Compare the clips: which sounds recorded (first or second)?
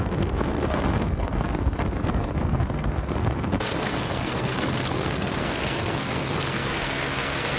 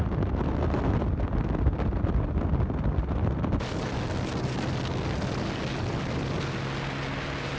second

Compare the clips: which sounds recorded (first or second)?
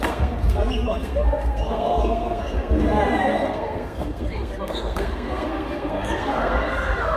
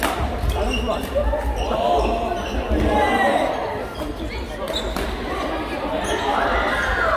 second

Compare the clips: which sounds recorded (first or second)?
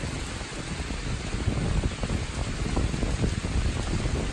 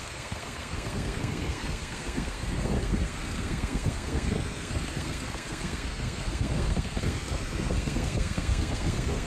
first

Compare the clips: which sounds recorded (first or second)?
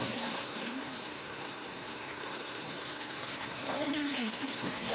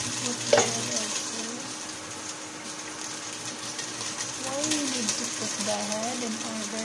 second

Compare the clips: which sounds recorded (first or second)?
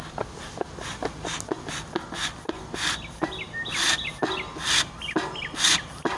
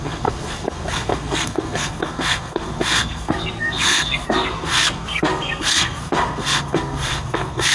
first